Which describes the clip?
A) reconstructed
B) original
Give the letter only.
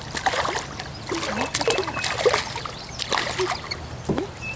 B